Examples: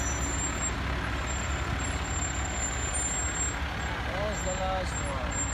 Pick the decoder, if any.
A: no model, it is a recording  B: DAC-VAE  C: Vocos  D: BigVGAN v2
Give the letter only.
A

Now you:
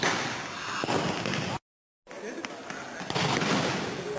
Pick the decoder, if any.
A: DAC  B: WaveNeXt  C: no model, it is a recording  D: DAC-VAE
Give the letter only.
C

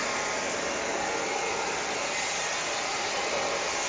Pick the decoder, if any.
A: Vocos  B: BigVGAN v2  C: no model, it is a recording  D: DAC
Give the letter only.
C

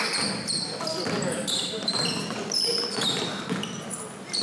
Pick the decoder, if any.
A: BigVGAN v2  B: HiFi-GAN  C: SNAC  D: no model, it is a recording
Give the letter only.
D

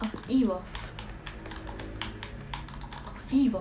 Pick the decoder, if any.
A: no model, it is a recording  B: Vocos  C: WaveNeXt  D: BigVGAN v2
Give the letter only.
A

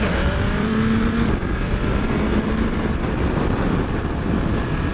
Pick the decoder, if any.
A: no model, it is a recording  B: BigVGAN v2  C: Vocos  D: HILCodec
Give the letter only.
B